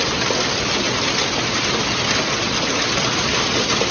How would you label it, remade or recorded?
recorded